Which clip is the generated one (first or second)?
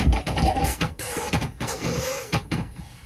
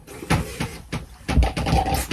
first